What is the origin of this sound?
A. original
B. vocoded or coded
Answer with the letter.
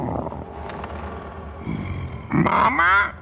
A